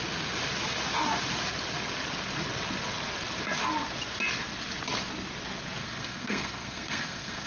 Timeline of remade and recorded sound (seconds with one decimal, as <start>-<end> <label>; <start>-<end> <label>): 0.0-5.8 recorded; 5.8-7.5 remade